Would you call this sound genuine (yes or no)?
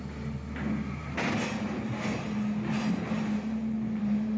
yes